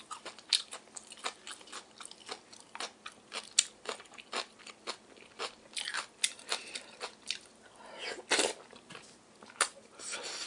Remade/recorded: recorded